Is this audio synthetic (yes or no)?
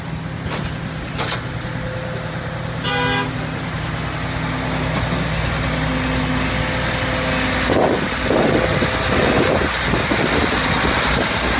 no